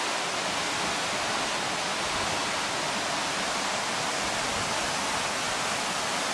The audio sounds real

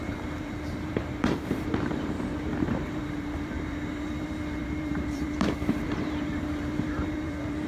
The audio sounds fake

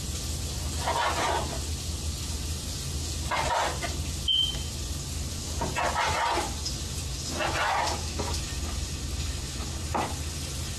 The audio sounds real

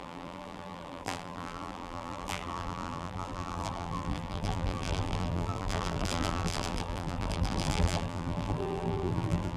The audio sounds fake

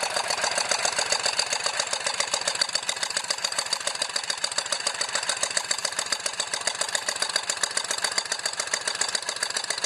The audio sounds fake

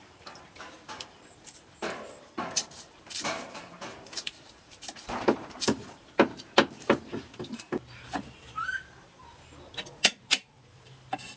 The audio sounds fake